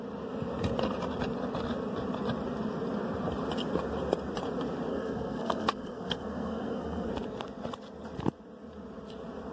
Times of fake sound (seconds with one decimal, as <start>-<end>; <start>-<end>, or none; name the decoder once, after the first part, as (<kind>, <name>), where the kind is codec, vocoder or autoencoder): 4.9-7.1 (codec, SNAC)